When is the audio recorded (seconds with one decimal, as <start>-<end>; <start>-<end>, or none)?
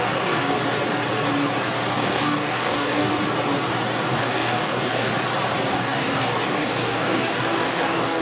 0.6-1.9; 3.1-4.1; 5.1-5.7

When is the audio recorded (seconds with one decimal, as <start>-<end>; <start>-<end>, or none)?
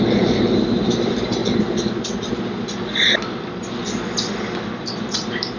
1.4-4.8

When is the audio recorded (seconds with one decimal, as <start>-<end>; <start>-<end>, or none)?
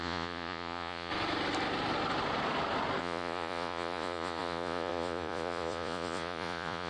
1.1-3.0